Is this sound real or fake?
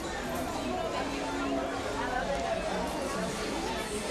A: real